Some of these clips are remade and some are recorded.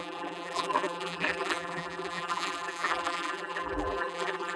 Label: remade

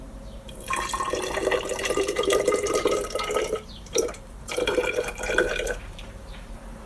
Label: remade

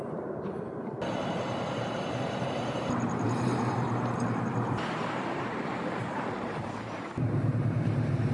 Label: remade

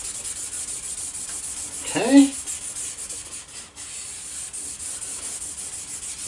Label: recorded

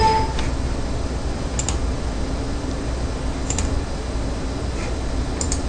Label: recorded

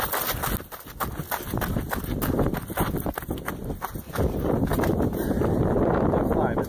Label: recorded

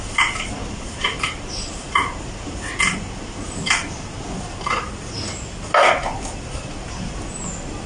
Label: recorded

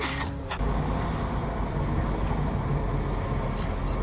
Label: recorded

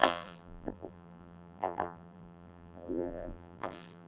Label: remade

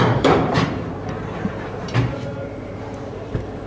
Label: remade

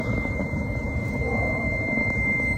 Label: remade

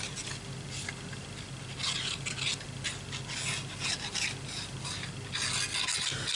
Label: recorded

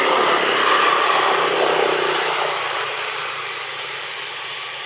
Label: remade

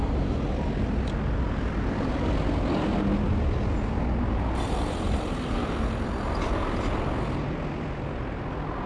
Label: recorded